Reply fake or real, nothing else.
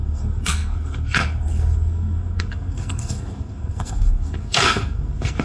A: fake